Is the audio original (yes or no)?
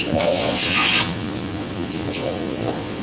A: no